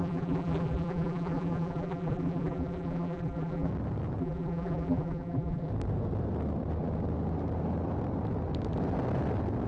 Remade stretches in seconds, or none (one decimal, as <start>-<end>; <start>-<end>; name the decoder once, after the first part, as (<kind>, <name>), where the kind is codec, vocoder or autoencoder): 0.0-3.7 (vocoder, BigVGAN v2); 4.2-5.7